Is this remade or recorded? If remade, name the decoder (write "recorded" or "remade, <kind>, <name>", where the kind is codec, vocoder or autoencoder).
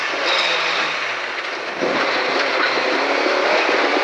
recorded